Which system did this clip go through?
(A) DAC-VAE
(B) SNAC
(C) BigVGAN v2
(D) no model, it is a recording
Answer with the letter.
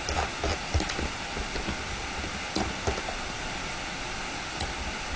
D